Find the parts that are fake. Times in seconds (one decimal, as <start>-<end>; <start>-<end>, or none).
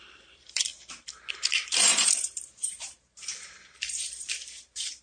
0.0-0.7; 1.3-5.0